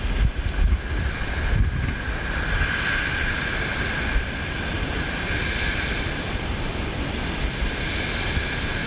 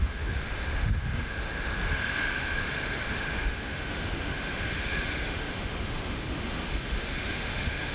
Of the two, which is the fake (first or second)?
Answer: second